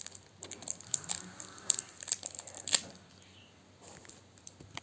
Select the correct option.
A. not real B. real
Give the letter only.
B